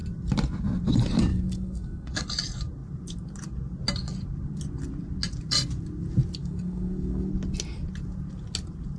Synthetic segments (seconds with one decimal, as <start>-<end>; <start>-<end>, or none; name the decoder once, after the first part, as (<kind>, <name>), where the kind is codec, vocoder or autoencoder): 1.3-2.2 (codec, DAC); 6.4-7.3